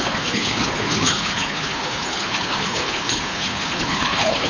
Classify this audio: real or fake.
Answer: fake